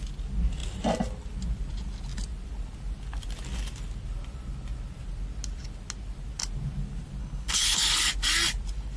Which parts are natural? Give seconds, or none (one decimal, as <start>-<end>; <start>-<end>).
0.0-7.2; 8.1-9.0